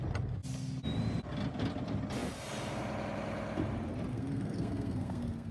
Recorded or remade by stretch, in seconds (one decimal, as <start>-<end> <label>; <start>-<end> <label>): 0.0-4.1 recorded; 4.1-5.5 remade